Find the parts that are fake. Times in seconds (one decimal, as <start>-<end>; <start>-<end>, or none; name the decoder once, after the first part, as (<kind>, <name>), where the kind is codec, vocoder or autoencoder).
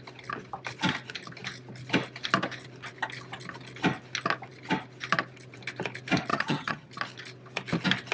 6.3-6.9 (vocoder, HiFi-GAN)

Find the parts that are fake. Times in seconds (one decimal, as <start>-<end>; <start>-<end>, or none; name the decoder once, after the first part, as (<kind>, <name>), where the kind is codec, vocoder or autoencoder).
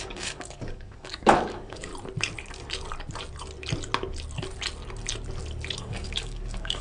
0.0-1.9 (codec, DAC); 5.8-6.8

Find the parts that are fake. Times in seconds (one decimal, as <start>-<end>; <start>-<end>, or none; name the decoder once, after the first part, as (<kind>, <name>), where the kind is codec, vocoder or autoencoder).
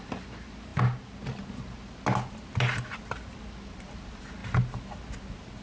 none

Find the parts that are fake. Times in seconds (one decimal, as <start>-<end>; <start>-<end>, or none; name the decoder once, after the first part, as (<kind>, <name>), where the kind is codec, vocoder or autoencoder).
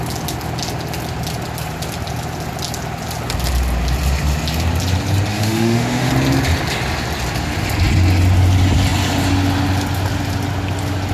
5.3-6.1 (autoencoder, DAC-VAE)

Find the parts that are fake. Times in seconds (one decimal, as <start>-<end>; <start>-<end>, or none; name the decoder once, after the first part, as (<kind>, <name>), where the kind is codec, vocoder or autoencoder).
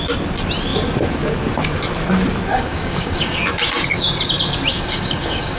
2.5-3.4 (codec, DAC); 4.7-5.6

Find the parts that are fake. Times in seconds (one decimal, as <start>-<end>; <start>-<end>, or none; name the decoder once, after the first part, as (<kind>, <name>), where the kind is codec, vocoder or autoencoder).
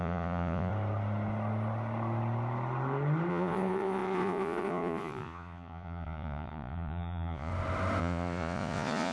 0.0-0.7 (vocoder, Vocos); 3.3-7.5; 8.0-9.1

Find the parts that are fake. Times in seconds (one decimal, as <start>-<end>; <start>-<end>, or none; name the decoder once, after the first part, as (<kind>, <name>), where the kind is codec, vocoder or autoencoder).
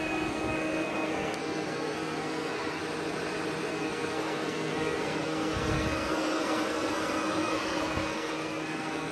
0.0-2.8 (codec, SNAC); 3.7-9.1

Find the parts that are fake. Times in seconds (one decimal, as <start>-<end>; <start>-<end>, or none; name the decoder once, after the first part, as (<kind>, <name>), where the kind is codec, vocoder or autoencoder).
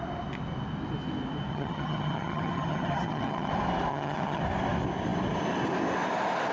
1.5-3.5 (vocoder, HiFi-GAN); 3.9-4.4